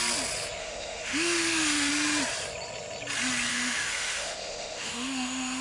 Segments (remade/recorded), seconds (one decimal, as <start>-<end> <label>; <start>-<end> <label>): 0.0-0.6 recorded; 0.6-1.9 remade; 1.9-3.5 recorded; 3.5-5.6 remade